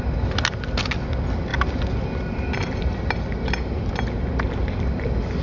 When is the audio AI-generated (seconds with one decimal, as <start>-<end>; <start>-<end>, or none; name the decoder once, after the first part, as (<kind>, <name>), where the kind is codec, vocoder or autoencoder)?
none